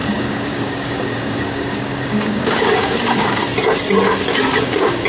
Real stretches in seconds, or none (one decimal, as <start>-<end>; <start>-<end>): 3.4-4.6